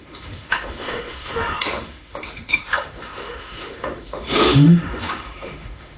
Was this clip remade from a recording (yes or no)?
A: yes